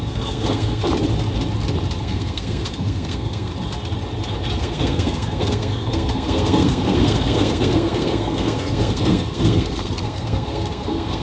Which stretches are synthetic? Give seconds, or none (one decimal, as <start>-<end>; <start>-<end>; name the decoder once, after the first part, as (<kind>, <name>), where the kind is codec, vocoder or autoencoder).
0.0-0.8 (codec, SNAC); 2.0-3.5; 4.6-11.2